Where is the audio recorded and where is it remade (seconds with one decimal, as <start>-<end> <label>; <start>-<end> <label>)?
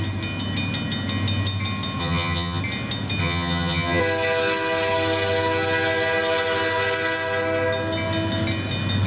0.0-2.0 recorded; 2.0-2.6 remade; 2.6-3.2 recorded; 3.2-4.0 remade; 4.0-9.1 recorded